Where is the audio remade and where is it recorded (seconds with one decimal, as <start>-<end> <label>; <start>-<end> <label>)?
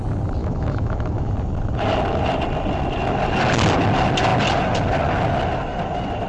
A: 0.0-0.4 recorded; 0.4-1.3 remade; 1.3-6.3 recorded